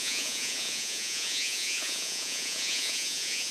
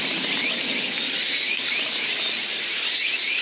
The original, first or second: second